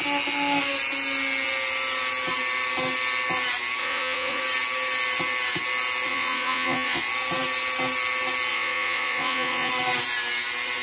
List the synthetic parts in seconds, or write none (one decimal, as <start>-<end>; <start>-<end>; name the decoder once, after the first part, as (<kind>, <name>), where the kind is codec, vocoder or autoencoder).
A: 3.8-4.4 (vocoder, Vocos); 6.1-7.0; 8.5-9.7